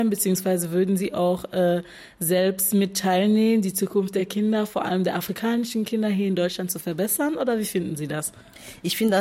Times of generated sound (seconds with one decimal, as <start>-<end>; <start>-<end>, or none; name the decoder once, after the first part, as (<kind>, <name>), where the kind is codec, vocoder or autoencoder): none